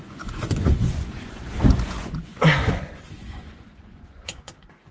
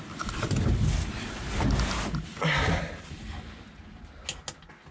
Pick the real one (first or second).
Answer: second